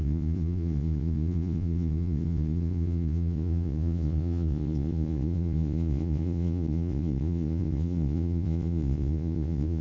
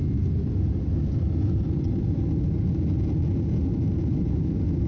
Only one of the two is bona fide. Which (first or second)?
second